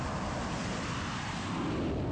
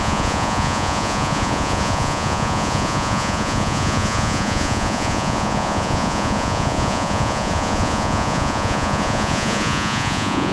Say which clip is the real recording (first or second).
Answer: first